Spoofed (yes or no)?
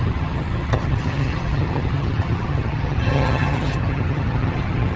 yes